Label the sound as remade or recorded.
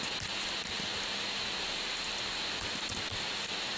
recorded